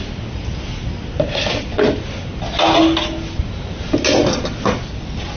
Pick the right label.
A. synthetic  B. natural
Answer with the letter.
B